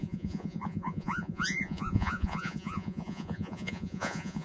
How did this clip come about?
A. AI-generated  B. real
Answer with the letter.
A